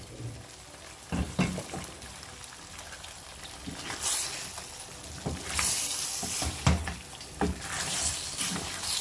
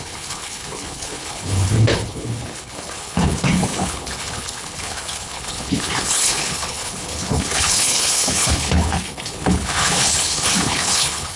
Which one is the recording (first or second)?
first